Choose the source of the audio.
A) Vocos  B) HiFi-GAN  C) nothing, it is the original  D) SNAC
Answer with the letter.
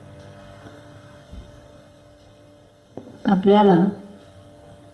D